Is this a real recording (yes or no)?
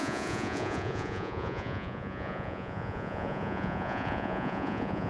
no